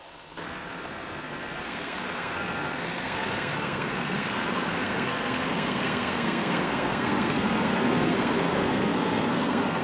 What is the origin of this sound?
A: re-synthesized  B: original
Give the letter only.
A